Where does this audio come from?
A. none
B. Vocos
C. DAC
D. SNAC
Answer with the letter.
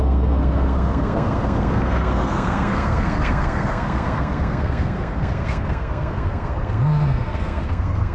D